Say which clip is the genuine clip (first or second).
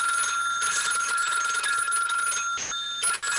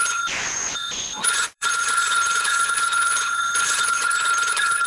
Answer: first